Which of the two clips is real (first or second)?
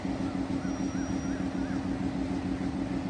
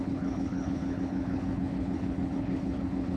first